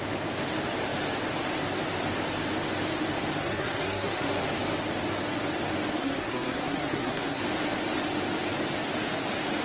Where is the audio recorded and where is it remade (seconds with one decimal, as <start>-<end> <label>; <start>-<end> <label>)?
0.0-3.4 recorded; 3.4-4.4 remade; 4.4-6.0 recorded; 6.0-7.4 remade; 7.4-9.6 recorded